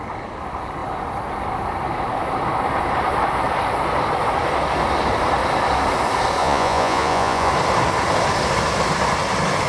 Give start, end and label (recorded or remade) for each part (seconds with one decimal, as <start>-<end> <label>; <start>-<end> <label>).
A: 0.0-6.4 recorded; 6.4-7.5 remade; 7.5-9.7 recorded